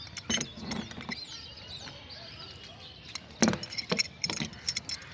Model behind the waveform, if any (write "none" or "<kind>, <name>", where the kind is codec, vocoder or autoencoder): none